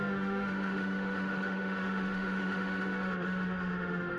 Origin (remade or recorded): remade